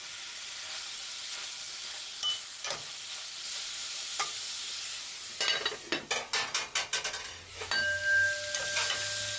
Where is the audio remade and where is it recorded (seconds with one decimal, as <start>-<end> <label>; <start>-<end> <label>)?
0.0-9.4 recorded